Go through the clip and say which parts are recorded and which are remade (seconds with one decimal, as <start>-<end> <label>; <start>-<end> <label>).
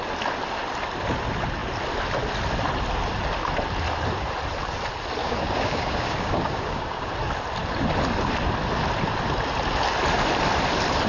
0.0-5.2 recorded; 5.2-7.1 remade; 7.1-11.1 recorded